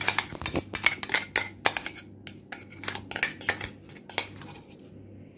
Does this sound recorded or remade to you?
recorded